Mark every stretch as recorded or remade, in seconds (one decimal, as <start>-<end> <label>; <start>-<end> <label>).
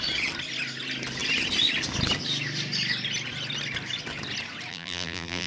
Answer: 0.0-4.7 recorded; 4.7-5.5 remade